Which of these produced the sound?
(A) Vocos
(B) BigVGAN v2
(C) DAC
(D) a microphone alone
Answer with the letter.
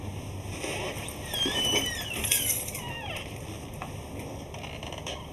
D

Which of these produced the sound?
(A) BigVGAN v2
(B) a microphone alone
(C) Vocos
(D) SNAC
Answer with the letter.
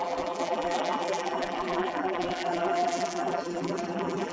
A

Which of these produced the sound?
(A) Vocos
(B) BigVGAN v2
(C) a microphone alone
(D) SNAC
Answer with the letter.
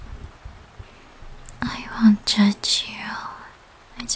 C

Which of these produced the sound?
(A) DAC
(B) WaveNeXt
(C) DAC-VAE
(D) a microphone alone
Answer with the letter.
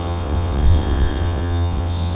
B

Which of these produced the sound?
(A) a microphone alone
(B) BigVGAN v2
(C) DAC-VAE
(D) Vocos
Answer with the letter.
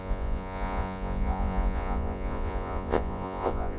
D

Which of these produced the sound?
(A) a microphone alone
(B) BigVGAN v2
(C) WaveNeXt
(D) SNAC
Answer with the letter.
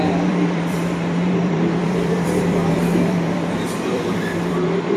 B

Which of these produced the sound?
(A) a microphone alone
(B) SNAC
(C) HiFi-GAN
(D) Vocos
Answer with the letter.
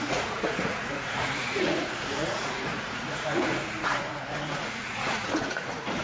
D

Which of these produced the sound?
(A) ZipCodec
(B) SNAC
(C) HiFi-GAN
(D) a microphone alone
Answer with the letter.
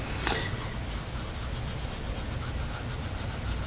D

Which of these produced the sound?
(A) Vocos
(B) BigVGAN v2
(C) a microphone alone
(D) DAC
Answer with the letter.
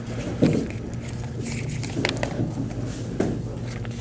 C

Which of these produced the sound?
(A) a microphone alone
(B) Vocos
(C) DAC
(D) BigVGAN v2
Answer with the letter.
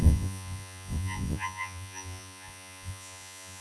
B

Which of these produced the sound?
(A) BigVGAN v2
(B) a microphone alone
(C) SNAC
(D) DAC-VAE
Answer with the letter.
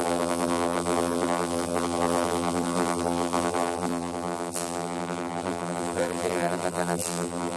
A